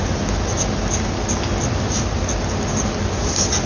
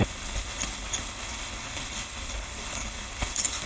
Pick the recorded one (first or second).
first